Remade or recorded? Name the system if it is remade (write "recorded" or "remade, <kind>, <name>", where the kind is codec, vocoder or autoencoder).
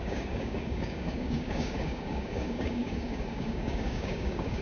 remade, codec, DAC